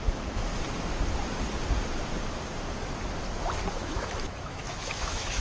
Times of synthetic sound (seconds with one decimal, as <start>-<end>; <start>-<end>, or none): 0.0-0.5; 3.7-5.4